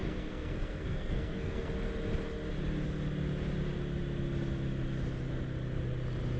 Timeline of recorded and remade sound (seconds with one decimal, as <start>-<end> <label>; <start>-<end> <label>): 0.0-1.7 remade; 1.7-6.4 recorded